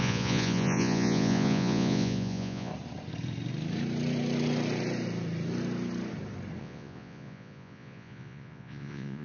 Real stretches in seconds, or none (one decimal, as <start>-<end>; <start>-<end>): 2.7-6.6

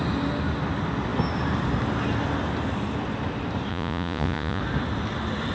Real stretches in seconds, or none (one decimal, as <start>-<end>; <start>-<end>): 0.0-3.7; 4.6-5.5

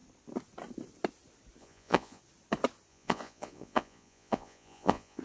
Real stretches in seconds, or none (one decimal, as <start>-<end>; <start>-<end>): 0.0-1.6; 2.2-2.9

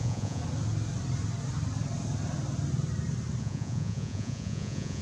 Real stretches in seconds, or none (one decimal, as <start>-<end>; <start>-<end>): 0.4-3.4

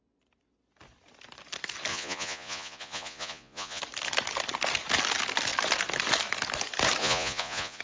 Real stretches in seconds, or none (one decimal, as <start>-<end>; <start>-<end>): 0.0-1.9; 3.8-7.0

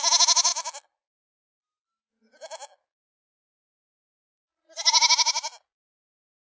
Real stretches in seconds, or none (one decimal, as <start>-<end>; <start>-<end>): 0.0-6.5

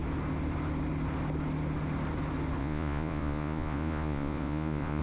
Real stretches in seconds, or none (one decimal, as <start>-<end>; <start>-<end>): 0.0-2.6

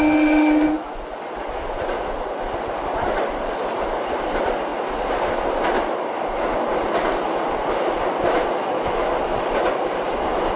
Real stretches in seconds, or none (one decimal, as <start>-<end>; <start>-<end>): 0.0-10.6